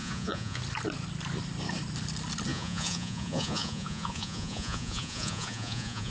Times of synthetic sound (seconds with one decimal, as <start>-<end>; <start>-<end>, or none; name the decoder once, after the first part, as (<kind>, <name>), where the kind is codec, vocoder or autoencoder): 0.0-0.6 (vocoder, Vocos); 2.5-6.1